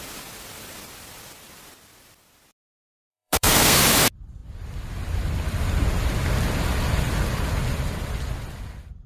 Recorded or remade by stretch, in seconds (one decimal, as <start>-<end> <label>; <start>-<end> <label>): 0.0-3.1 recorded; 3.1-3.8 remade; 3.8-9.1 recorded